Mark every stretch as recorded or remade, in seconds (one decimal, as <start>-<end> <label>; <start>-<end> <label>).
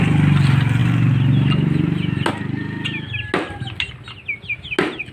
0.0-5.1 recorded